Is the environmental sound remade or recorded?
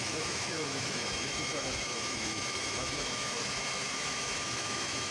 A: remade